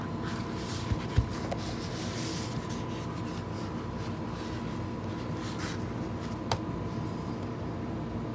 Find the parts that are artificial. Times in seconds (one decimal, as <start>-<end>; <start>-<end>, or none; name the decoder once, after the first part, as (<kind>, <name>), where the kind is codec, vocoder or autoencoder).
none